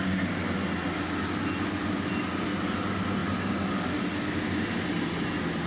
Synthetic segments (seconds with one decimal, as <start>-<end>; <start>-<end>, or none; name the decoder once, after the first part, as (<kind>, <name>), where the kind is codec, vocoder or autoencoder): none

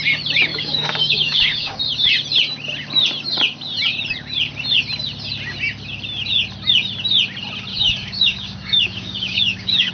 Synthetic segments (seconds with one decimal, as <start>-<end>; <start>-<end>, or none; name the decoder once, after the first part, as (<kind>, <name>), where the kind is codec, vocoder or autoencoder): 0.5-1.8 (codec, DAC); 7.7-9.9

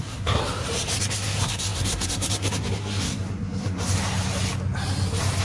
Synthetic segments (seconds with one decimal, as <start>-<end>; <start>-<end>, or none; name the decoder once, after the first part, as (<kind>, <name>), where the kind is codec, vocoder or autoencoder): 0.0-0.4 (codec, SNAC); 1.0-4.0

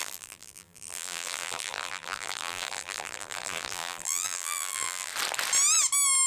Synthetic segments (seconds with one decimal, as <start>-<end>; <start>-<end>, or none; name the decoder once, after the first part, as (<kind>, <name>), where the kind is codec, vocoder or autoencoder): 0.0-5.1 (vocoder, BigVGAN v2)

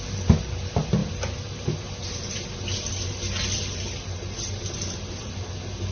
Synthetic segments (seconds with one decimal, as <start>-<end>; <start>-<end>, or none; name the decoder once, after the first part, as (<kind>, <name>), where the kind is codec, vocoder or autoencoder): none

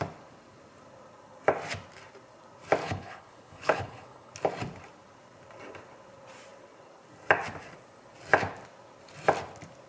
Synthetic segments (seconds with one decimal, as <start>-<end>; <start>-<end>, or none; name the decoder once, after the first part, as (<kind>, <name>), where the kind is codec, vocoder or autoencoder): 2.8-4.3 (codec, HILCodec)